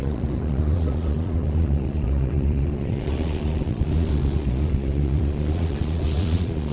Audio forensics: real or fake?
fake